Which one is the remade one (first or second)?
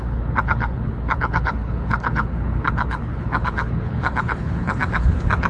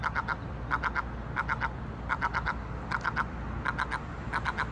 first